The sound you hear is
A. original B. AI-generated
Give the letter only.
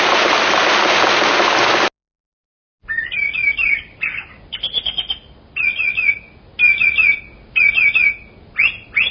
A